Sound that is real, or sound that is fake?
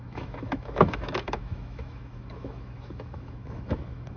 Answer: fake